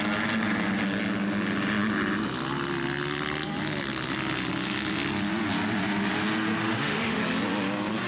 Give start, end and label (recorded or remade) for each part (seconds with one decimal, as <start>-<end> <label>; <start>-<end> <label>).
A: 0.0-6.6 recorded; 6.6-7.2 remade; 7.2-8.1 recorded